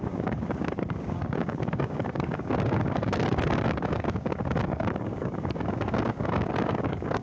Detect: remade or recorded remade